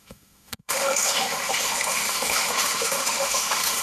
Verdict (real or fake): fake